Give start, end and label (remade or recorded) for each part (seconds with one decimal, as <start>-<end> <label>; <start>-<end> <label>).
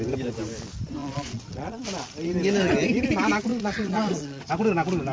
0.0-1.0 recorded; 1.0-1.8 remade; 1.8-3.5 recorded; 3.5-4.5 remade; 4.5-5.1 recorded